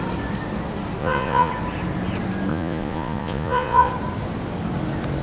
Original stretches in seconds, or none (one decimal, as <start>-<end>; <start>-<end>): 0.0-1.0; 1.5-2.5; 3.9-5.2